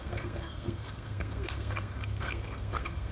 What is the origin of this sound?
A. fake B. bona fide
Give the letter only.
A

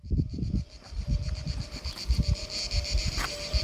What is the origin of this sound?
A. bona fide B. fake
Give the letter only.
A